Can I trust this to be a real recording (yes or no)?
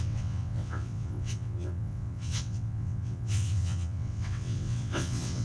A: no